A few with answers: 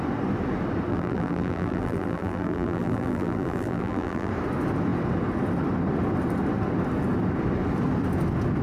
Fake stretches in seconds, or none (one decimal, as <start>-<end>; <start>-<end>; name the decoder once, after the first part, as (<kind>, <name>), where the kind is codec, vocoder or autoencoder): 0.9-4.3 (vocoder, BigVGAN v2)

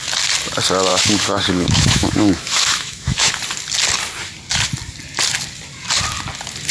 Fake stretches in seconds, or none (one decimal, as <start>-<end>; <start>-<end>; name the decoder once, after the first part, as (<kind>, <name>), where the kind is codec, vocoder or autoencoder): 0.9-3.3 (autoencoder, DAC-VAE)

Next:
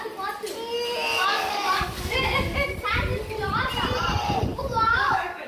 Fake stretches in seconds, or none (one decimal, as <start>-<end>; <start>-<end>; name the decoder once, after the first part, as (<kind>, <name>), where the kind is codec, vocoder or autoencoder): 1.2-2.4 (codec, DAC); 4.5-5.5